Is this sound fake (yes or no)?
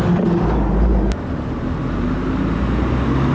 no